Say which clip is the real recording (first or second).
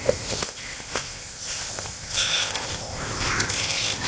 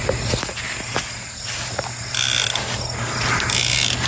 second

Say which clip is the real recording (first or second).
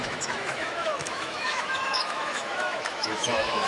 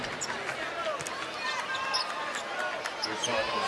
second